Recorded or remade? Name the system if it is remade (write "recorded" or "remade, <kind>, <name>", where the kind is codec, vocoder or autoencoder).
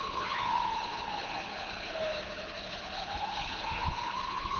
remade, codec, HILCodec